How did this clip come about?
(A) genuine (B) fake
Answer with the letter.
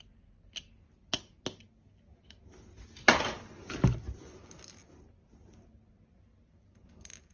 A